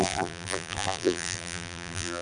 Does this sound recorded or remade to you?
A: remade